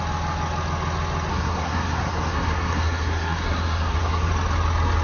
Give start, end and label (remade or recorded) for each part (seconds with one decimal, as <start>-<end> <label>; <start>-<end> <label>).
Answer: 0.0-1.3 recorded; 1.3-4.3 remade; 4.3-5.0 recorded